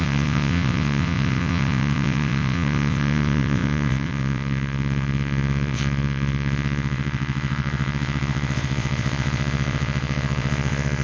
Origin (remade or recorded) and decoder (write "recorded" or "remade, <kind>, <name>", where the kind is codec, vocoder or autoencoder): remade, vocoder, WaveNeXt